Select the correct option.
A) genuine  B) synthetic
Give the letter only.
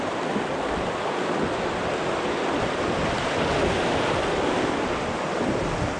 A